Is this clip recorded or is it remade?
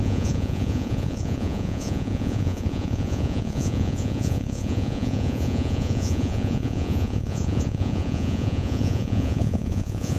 remade